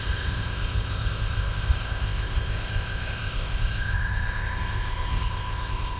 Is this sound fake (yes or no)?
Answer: yes